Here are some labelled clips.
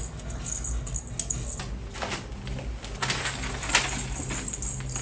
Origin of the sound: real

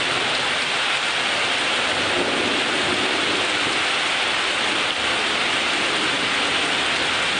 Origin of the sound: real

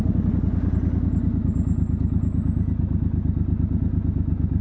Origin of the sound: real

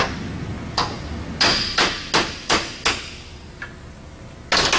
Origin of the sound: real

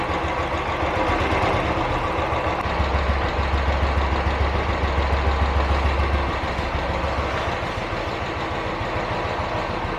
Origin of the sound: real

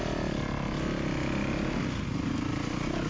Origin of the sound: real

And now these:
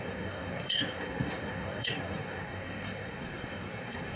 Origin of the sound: fake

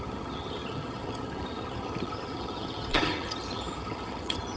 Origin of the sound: fake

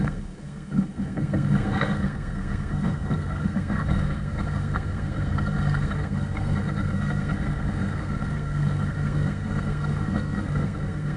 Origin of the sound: fake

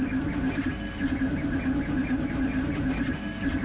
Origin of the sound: real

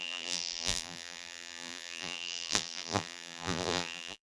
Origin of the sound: fake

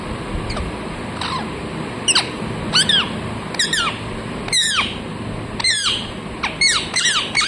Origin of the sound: real